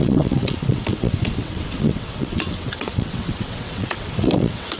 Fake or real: fake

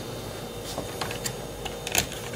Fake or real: real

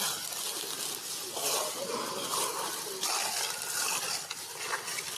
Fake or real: real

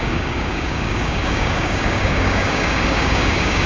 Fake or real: fake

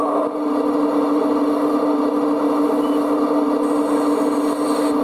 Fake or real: real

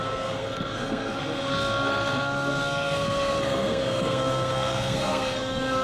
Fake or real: fake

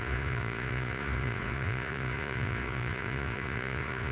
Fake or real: fake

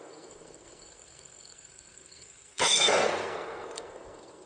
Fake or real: fake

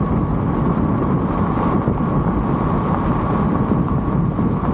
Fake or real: real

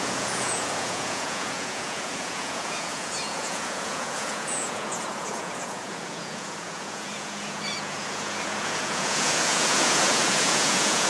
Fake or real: fake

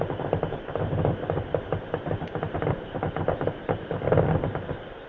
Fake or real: real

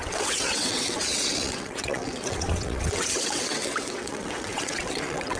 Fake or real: fake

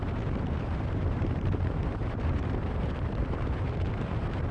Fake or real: fake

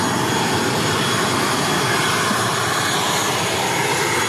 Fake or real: real